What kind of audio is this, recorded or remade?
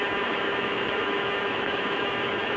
remade